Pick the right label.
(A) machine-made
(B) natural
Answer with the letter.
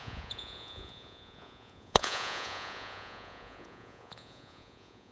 A